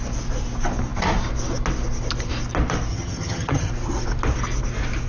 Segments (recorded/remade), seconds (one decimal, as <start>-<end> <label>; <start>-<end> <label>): 0.0-2.9 recorded; 2.9-3.7 remade; 3.7-5.1 recorded